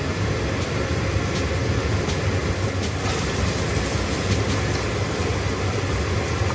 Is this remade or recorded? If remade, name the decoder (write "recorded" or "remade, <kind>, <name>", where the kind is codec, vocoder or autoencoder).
recorded